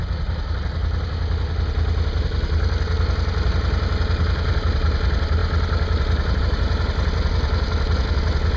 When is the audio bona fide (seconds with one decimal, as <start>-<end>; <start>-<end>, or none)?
0.0-8.6